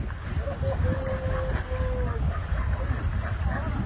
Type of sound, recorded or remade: recorded